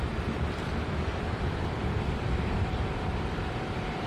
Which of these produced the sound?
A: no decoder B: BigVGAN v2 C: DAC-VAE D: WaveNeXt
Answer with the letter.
B